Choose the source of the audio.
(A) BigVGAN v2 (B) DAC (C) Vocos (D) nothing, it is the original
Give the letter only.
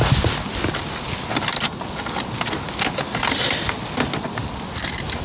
D